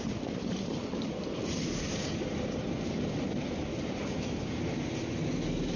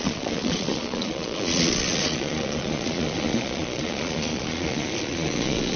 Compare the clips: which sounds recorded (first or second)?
first